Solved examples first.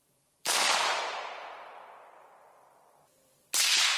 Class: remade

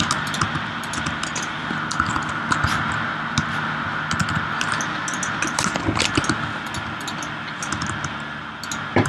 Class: recorded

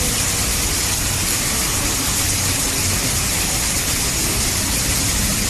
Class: recorded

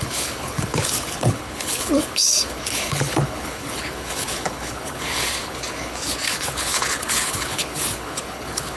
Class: remade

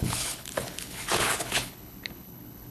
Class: remade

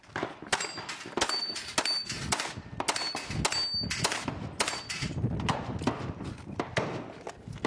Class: recorded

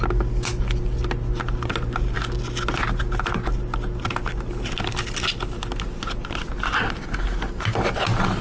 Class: recorded